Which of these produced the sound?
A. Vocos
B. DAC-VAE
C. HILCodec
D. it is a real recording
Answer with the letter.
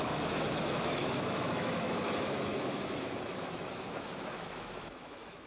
B